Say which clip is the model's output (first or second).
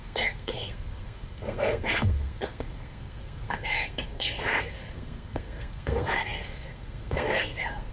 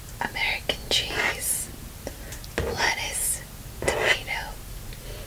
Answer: first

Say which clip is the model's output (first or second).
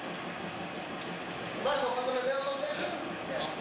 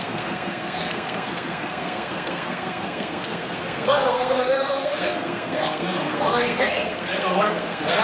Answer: second